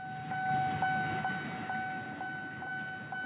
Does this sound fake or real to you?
real